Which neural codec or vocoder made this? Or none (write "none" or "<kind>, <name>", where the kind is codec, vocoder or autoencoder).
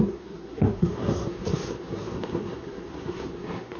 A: codec, SNAC